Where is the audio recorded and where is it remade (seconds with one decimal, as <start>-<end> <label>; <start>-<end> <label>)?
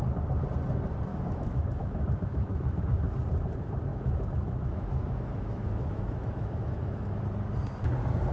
0.0-1.1 recorded; 1.1-2.8 remade; 2.8-3.9 recorded; 3.9-7.2 remade; 7.2-8.3 recorded